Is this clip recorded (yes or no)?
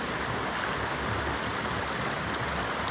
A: yes